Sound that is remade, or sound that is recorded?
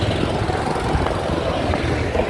recorded